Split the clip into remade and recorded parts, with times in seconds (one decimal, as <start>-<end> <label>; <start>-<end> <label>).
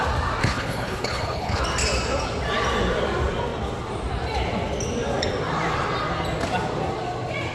0.0-0.4 recorded; 0.4-1.6 remade; 1.6-7.5 recorded